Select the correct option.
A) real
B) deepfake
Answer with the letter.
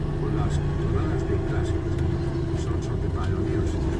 A